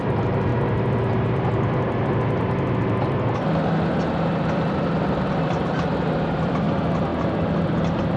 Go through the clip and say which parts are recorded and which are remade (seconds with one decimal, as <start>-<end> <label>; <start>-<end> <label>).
0.0-0.5 remade; 0.5-4.1 recorded; 4.1-8.2 remade